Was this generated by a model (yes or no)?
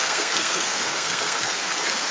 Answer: yes